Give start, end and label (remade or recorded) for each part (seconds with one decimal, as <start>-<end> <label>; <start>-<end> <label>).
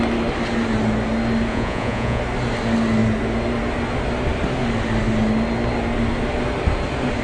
0.0-1.5 recorded; 1.5-2.2 remade; 2.2-7.2 recorded